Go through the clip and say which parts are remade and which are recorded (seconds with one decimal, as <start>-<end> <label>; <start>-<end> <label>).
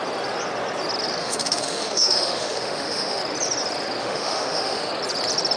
0.0-1.2 recorded; 1.2-3.2 remade; 3.2-4.0 recorded; 4.0-4.9 remade; 4.9-5.6 recorded